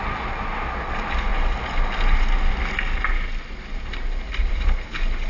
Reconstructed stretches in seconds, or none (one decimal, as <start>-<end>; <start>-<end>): none